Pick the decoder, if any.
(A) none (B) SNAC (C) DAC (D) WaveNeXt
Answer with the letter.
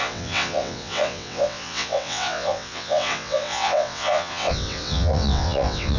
D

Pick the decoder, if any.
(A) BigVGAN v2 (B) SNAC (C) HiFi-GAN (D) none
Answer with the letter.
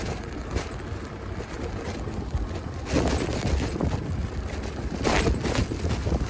D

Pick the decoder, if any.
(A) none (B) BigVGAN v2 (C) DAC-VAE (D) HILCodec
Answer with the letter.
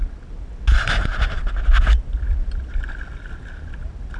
A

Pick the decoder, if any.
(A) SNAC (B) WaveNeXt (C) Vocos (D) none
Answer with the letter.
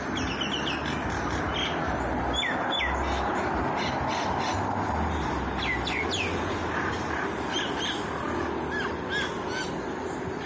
D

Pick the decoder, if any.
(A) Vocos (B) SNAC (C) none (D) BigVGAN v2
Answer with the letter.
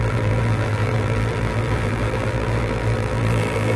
D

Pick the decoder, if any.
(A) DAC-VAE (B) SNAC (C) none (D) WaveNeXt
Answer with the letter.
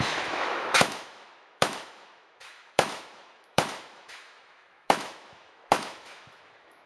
A